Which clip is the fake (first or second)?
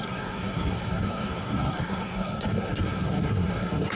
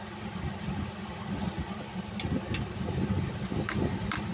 first